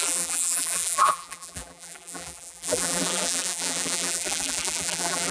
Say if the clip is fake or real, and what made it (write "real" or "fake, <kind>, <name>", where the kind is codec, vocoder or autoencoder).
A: fake, vocoder, BigVGAN v2